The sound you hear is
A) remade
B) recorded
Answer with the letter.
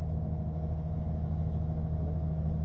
A